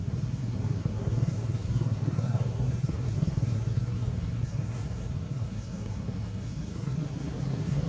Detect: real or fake fake